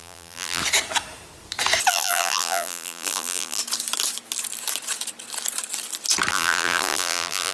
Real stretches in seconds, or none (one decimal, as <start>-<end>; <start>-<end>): 0.6-1.9; 3.6-6.3